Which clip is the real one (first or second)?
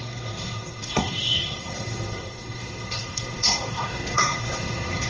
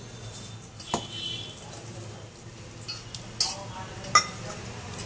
second